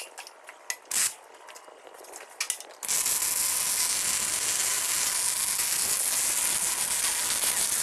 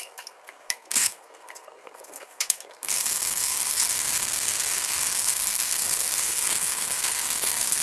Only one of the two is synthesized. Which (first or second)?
second